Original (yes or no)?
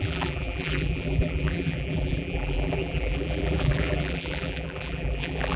no